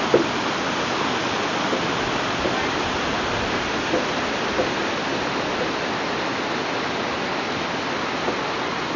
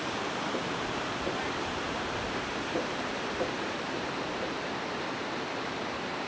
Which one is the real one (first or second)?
first